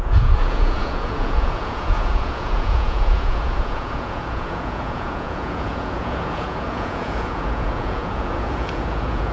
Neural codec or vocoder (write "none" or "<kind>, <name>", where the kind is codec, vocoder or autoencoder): vocoder, Vocos